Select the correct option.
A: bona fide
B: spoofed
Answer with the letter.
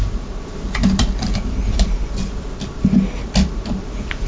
A